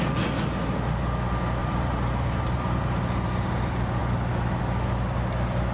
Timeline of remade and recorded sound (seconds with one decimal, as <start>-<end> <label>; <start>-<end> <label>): 0.0-1.6 recorded; 1.6-3.0 remade; 3.0-5.7 recorded